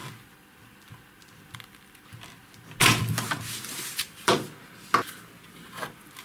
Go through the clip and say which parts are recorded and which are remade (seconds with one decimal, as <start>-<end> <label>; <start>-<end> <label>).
0.0-3.7 recorded; 3.7-4.3 remade; 4.3-6.2 recorded